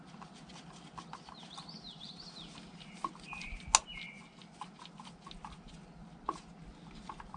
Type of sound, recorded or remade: recorded